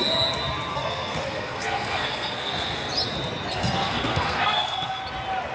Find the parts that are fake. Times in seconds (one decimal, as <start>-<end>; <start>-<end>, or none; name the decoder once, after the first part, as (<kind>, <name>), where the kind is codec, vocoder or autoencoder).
0.7-2.9 (codec, SNAC); 3.6-5.0